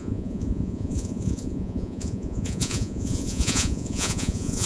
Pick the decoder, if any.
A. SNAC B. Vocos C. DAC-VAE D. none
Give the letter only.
B